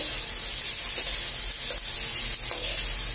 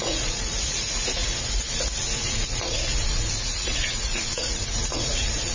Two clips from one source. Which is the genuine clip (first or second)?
first